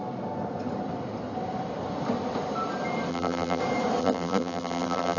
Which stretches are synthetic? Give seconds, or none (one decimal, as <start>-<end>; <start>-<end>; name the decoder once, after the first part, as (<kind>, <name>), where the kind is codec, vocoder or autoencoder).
3.1-3.6 (vocoder, BigVGAN v2); 4.0-5.2